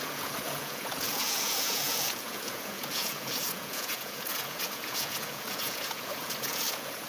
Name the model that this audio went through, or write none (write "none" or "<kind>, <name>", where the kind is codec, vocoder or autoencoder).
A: vocoder, Vocos